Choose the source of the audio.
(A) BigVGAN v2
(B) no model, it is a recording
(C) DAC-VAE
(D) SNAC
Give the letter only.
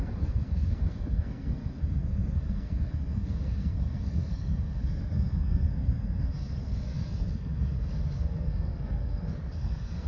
D